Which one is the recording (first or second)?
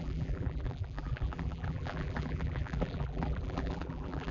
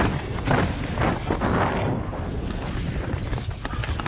second